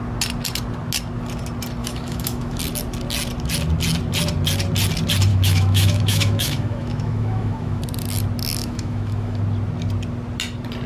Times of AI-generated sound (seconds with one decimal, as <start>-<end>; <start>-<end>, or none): 1.8-2.6; 5.3-7.8; 8.6-9.4